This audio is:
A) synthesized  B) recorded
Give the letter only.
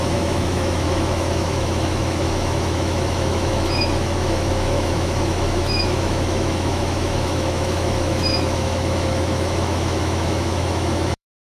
A